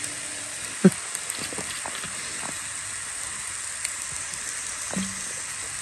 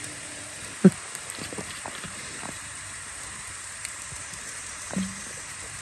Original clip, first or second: first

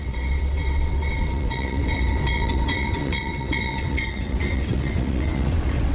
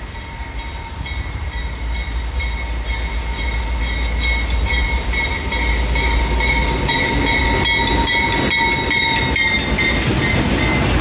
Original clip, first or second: second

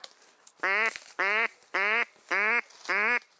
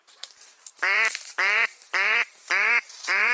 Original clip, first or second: first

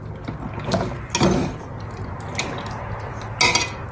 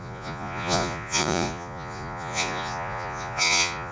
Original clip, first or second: first